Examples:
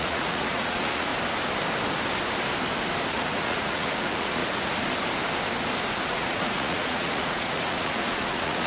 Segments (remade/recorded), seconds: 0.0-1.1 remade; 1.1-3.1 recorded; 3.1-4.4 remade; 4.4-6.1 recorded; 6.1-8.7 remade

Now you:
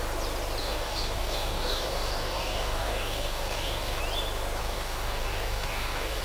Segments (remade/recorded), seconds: 0.0-0.6 recorded; 0.6-4.0 remade; 4.0-4.6 recorded; 4.6-6.2 remade

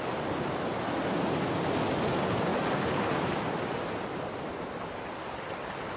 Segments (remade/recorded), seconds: 0.0-6.0 recorded

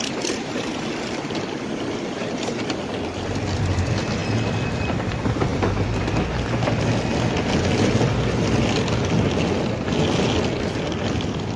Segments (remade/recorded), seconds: 0.0-11.6 recorded

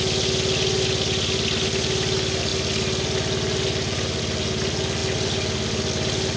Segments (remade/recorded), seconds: 0.0-6.4 recorded

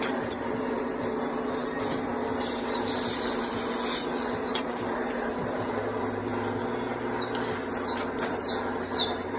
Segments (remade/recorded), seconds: 0.0-3.6 remade; 3.6-4.2 recorded; 4.2-6.3 remade; 6.3-8.2 recorded; 8.2-9.4 remade

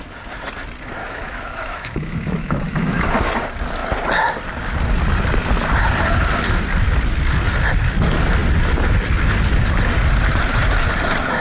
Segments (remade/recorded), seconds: 0.0-1.0 recorded; 1.0-3.3 remade; 3.3-11.4 recorded

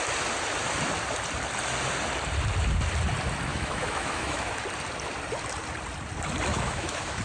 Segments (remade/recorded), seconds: 0.0-3.5 recorded; 3.5-4.6 remade; 4.6-6.5 recorded; 6.5-7.2 remade